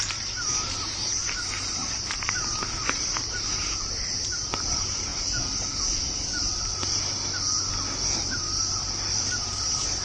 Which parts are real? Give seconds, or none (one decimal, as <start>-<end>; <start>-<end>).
5.1-8.3